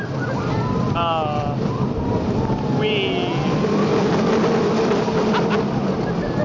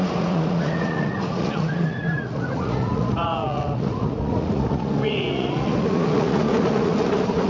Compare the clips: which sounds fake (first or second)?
second